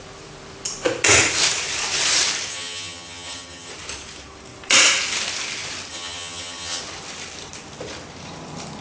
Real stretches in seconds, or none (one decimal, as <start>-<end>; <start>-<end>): 0.0-2.5; 3.7-5.9; 6.8-8.8